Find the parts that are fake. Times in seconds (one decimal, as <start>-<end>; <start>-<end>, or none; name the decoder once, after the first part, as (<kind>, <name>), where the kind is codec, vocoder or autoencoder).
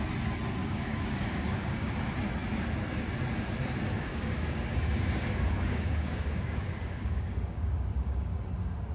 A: 0.6-1.9 (codec, DAC); 4.1-8.4